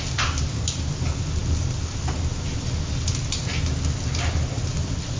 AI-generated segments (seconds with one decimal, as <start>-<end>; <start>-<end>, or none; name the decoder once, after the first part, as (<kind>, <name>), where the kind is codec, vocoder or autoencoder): none